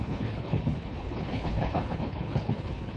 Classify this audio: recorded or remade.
remade